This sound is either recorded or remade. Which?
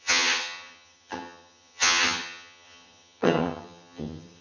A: remade